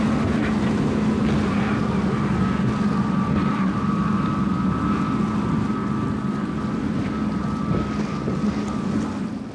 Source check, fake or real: real